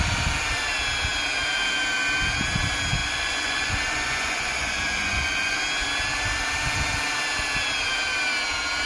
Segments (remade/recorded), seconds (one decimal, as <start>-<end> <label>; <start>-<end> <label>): 0.0-3.0 recorded; 3.0-5.6 remade; 5.6-8.9 recorded